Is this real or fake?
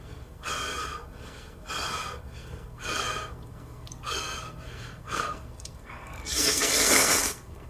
fake